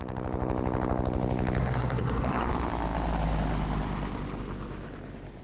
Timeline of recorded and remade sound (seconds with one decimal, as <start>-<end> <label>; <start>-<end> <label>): 0.0-1.6 recorded; 1.6-2.5 remade; 2.5-5.4 recorded